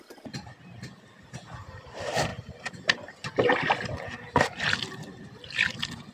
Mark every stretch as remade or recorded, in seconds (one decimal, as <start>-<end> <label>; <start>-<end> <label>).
0.0-6.1 recorded